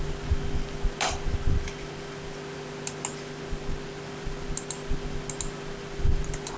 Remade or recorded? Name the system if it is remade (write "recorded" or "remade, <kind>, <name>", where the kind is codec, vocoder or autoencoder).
recorded